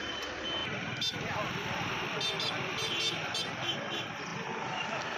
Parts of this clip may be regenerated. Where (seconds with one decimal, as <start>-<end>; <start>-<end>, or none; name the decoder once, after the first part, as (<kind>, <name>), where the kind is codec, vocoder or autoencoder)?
none